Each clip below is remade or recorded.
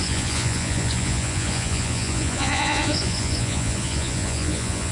remade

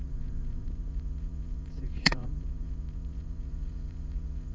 remade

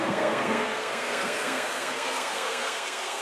remade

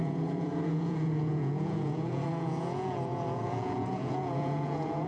remade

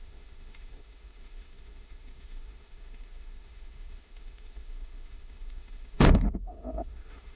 remade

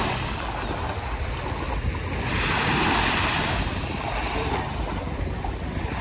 recorded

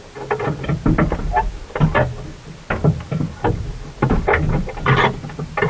recorded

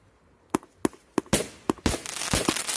recorded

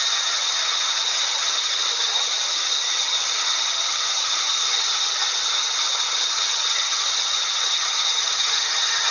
remade